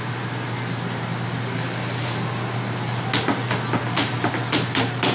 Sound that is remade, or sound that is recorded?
recorded